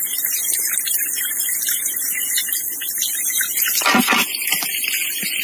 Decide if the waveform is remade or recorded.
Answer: recorded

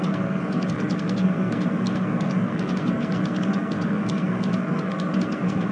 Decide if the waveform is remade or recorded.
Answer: remade